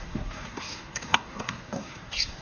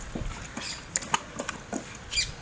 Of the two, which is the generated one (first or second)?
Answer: first